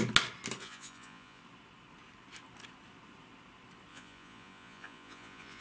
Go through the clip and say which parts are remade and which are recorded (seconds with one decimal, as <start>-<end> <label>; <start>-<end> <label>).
0.0-0.6 recorded; 0.6-1.4 remade; 1.4-3.9 recorded; 3.9-5.6 remade